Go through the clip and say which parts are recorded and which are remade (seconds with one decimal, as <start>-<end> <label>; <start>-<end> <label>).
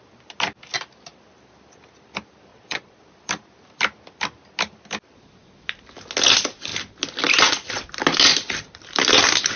0.0-2.5 recorded; 2.5-3.0 remade; 3.0-9.6 recorded